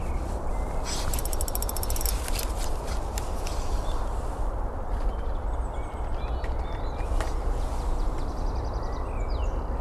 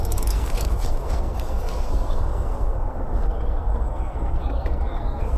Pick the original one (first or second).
first